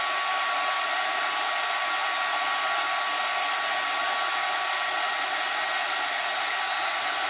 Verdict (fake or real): real